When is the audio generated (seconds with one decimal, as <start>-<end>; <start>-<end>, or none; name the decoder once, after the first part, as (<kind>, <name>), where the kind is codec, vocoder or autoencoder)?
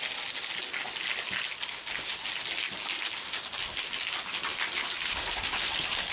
none